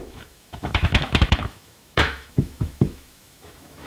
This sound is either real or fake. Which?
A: fake